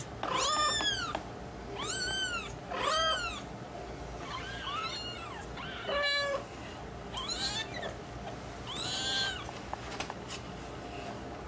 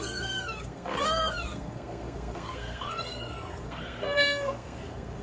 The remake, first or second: second